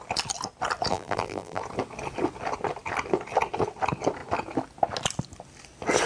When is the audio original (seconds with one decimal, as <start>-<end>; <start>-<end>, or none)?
0.0-0.9; 1.6-6.1